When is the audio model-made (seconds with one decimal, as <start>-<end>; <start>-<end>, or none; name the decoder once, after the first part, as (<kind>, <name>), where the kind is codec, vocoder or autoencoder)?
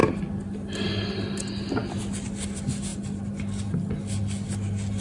none